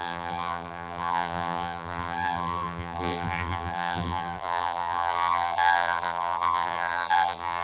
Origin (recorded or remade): remade